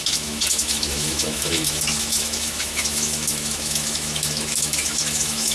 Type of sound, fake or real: fake